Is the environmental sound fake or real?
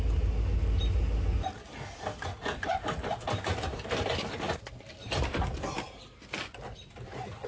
real